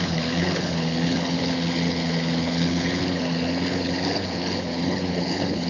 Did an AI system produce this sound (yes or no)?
yes